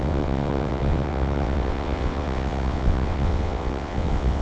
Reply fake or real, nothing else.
fake